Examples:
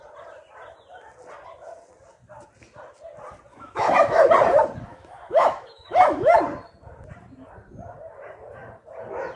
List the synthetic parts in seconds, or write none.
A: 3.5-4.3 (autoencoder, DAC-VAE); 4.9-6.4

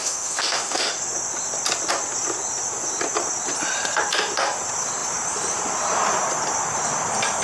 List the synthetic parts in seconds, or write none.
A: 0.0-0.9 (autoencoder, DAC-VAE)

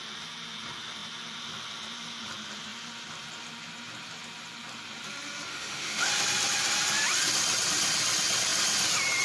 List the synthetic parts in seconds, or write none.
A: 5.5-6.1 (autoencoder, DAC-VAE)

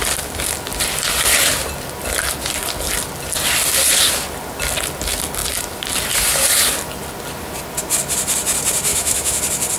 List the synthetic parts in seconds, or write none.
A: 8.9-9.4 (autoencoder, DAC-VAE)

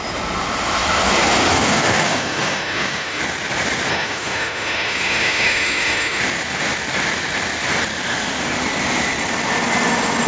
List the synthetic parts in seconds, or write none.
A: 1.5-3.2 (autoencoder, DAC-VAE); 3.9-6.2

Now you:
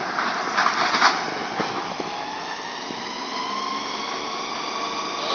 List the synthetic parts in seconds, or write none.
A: 1.3-4.5 (autoencoder, DAC-VAE)